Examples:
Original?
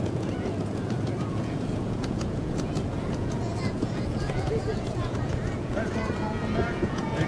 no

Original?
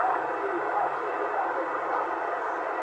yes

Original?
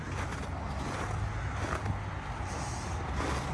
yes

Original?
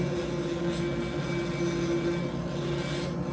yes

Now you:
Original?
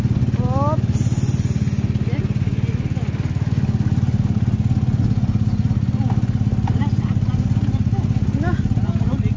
yes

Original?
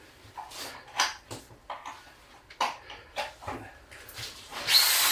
yes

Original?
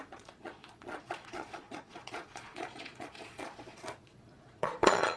no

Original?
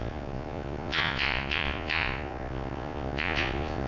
no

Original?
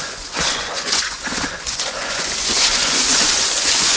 no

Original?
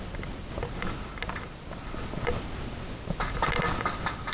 yes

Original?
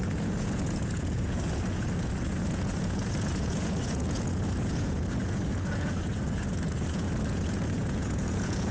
no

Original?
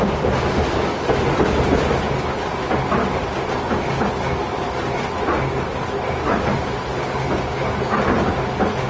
yes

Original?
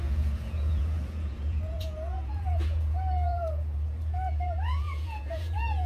no